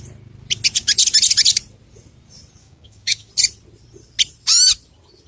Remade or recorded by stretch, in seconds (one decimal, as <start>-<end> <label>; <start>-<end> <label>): 0.0-2.6 recorded; 2.6-3.3 remade; 3.3-5.3 recorded